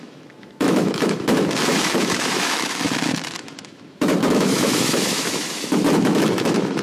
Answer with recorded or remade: remade